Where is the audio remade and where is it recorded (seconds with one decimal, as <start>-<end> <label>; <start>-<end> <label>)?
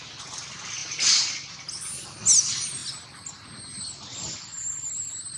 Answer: 0.0-5.4 recorded